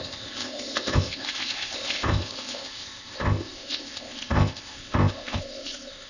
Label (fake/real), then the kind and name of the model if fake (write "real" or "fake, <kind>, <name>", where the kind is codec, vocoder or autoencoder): fake, codec, ZipCodec